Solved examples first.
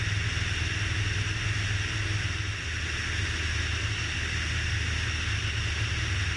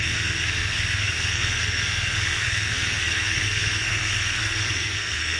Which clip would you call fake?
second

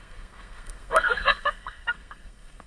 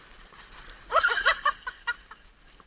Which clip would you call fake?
first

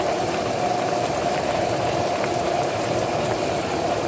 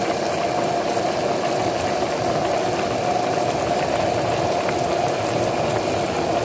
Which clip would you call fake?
first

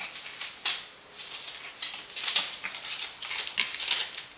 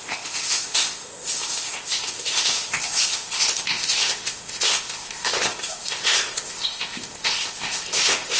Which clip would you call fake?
second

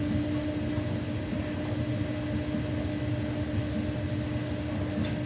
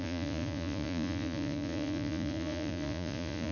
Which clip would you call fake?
second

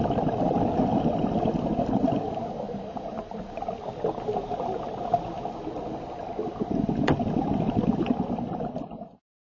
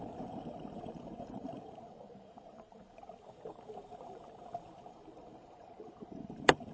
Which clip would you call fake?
second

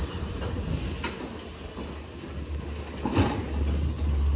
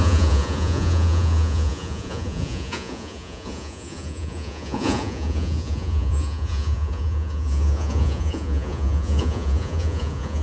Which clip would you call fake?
second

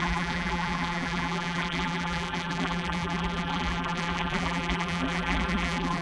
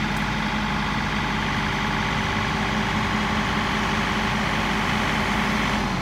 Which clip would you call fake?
first